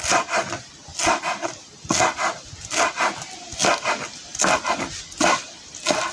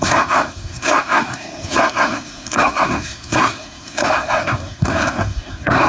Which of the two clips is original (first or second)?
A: first